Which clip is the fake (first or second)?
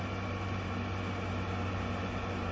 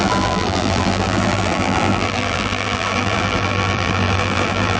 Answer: second